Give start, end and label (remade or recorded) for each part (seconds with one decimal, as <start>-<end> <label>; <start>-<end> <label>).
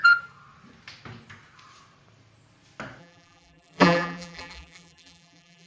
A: 0.0-3.0 recorded; 3.0-5.7 remade